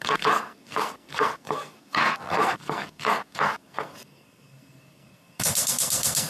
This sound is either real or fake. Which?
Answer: fake